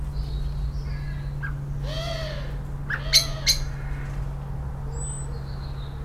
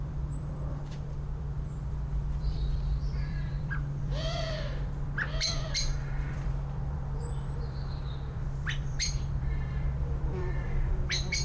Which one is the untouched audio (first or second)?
first